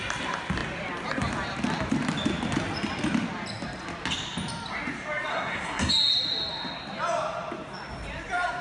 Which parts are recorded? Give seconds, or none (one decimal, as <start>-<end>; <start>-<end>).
0.0-5.3; 5.9-8.6